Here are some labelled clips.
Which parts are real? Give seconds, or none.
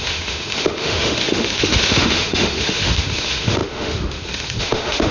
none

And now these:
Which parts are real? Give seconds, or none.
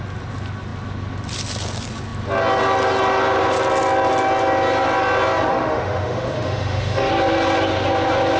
0.0-5.5; 7.1-8.4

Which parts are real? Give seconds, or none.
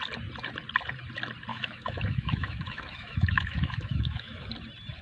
0.0-1.5; 4.5-5.0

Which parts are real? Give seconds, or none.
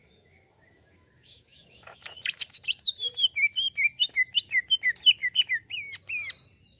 2.9-6.8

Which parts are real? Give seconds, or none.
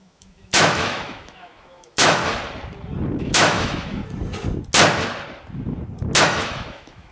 2.2-3.2; 4.0-6.2